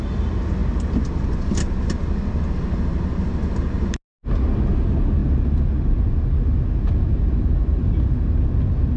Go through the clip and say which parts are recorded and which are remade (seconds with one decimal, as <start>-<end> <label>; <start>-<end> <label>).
0.0-9.0 recorded